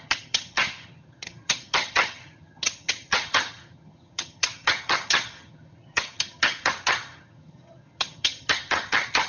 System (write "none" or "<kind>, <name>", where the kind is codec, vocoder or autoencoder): vocoder, HiFi-GAN